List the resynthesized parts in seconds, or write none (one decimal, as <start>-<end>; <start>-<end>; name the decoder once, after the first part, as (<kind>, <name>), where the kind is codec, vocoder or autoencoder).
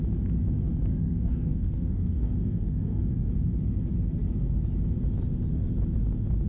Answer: 0.9-3.0 (codec, SNAC)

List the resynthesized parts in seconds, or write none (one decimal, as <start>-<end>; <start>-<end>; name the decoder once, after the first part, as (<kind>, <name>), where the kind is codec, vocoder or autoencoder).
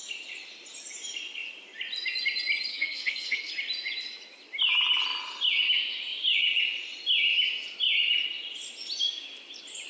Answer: 2.7-3.5 (codec, SNAC)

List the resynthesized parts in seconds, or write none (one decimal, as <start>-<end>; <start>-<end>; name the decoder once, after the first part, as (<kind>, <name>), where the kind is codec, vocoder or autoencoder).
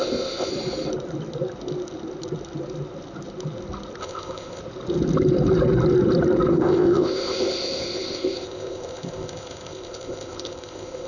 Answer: 0.0-0.5 (codec, ZipCodec); 4.0-4.6; 6.5-11.1